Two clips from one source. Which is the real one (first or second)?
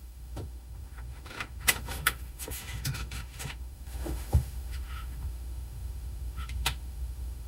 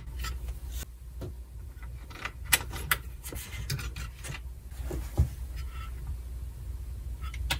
second